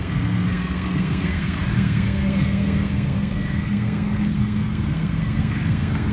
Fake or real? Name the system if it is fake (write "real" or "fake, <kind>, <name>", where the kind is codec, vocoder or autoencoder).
fake, codec, SNAC